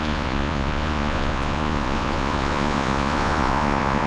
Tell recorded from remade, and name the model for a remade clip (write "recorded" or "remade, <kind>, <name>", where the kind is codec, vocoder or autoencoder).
remade, vocoder, Vocos